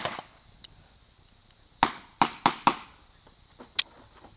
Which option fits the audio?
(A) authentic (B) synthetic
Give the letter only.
A